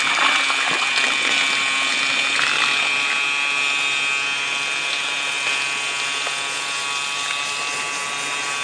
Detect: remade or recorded recorded